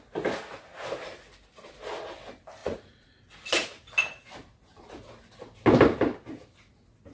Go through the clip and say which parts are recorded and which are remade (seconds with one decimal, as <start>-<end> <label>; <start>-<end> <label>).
0.0-2.6 recorded; 2.6-3.2 remade; 3.2-7.1 recorded